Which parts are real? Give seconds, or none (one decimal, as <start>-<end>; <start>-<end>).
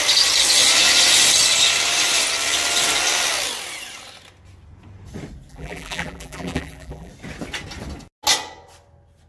0.0-5.5; 7.1-9.3